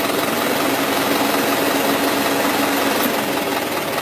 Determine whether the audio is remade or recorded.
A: recorded